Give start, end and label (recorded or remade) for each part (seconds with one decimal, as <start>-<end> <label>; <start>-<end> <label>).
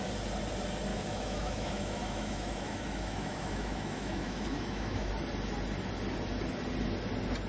0.0-0.9 recorded; 0.9-5.1 remade; 5.1-7.5 recorded